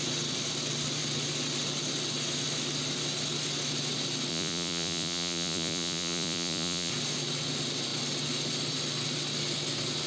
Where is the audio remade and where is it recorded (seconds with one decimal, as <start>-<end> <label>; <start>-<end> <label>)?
0.0-4.3 recorded; 4.3-6.9 remade; 6.9-10.1 recorded